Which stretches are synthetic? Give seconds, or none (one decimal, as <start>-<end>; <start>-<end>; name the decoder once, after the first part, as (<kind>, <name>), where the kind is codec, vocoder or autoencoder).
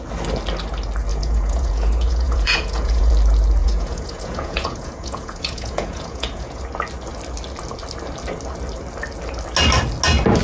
1.1-3.1 (vocoder, Vocos); 3.6-6.6